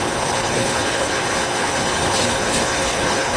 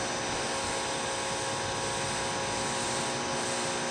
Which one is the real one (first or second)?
second